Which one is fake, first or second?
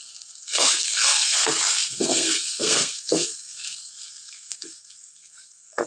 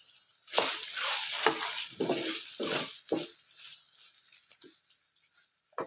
first